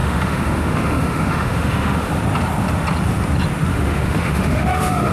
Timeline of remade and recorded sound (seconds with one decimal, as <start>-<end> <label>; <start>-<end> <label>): 0.0-2.1 remade; 2.1-3.7 recorded; 3.7-5.1 remade